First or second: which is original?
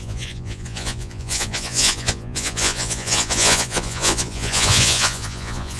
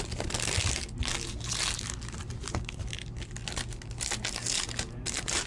second